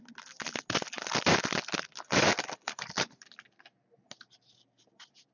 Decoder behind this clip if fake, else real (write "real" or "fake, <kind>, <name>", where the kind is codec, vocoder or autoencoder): real